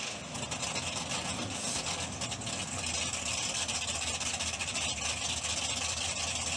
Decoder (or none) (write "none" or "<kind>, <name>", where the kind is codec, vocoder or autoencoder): none